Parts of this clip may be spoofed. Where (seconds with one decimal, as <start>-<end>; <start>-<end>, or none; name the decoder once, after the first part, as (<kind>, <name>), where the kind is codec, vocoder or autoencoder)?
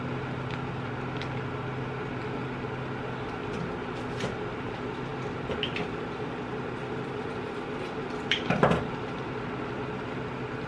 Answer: none